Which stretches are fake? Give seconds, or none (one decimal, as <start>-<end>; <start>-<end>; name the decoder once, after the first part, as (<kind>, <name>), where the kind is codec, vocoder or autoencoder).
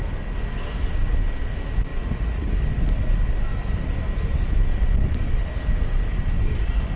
1.9-2.5 (vocoder, Vocos)